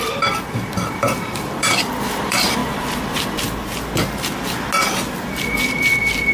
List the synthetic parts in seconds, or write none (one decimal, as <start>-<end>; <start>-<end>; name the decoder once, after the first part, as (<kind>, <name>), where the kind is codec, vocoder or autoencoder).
0.0-2.6 (vocoder, BigVGAN v2); 5.5-6.3

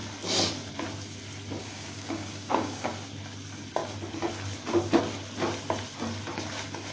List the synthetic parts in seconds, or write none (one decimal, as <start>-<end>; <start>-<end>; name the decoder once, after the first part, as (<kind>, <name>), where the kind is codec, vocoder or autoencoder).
1.6-2.9 (codec, DAC)

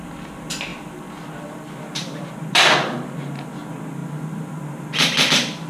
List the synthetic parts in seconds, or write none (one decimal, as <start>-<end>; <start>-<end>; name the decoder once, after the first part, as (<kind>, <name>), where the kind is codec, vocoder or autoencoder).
none